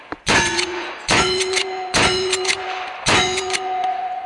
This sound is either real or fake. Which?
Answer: fake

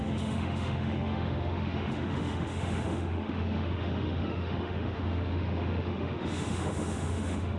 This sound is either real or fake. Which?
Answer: fake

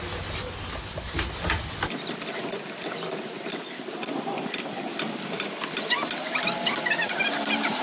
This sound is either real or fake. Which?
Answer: real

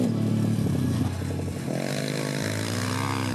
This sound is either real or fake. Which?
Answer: real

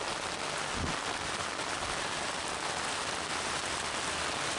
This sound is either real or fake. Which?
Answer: real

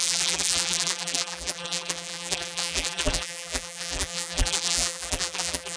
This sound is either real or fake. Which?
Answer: fake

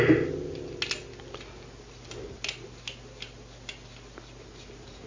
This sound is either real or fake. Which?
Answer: real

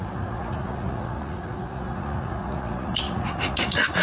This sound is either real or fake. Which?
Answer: fake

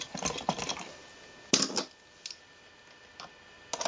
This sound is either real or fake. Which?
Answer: real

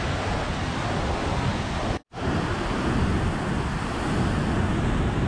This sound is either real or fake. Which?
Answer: real